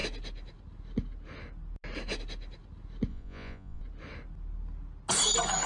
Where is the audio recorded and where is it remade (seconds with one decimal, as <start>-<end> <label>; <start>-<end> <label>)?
0.0-3.1 recorded; 3.1-3.8 remade; 3.8-5.7 recorded